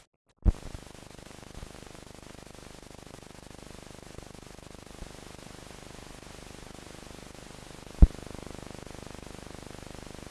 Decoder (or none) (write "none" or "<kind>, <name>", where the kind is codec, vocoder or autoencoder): none